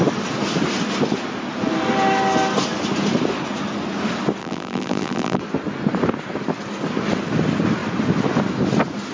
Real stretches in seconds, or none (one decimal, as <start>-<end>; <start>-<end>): 0.0-4.4; 5.4-9.1